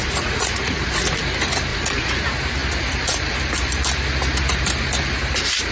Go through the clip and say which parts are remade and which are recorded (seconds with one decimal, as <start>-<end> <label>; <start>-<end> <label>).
0.0-1.2 remade; 1.2-1.7 recorded; 1.7-2.2 remade; 2.2-5.7 recorded